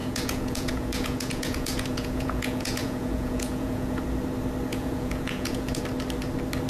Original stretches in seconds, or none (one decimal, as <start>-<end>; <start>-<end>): 4.0-4.7; 5.8-6.7